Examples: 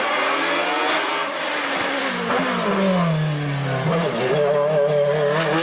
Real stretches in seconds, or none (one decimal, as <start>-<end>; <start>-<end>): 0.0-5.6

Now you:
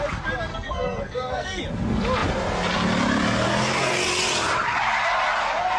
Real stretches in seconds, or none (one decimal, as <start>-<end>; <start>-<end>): 0.0-0.5; 1.6-5.8

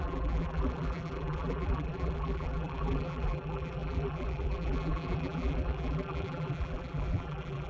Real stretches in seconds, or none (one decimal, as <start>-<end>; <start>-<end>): none